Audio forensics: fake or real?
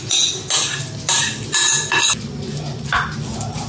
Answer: real